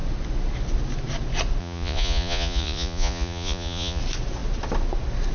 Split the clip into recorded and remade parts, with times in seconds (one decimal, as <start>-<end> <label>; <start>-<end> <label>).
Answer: 0.0-1.6 recorded; 1.6-4.0 remade; 4.0-5.3 recorded

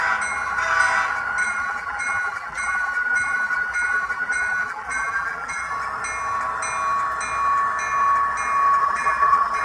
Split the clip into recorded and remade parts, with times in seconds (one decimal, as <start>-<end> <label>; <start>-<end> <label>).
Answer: 0.0-1.4 recorded; 1.4-5.7 remade; 5.7-8.8 recorded; 8.8-9.6 remade

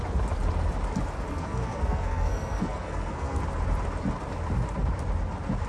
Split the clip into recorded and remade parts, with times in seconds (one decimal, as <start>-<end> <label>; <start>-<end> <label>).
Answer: 0.0-1.3 recorded; 1.3-3.4 remade; 3.4-5.7 recorded

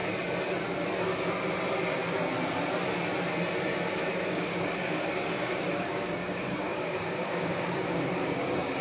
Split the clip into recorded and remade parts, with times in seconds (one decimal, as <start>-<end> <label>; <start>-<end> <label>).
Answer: 0.0-4.2 recorded; 4.2-8.8 remade

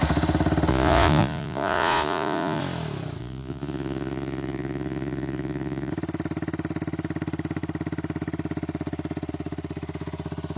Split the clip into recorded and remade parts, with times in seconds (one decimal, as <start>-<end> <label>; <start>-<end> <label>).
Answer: 0.0-0.7 recorded; 0.7-2.6 remade; 2.6-3.2 recorded; 3.2-5.9 remade; 5.9-10.6 recorded

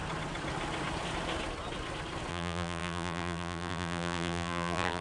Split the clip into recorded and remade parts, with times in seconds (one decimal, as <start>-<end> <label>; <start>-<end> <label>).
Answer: 0.0-2.3 recorded; 2.3-5.0 remade

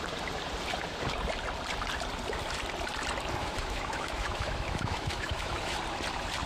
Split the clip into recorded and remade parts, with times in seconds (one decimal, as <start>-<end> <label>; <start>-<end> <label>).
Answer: 0.0-3.4 recorded; 3.4-5.8 remade; 5.8-6.5 recorded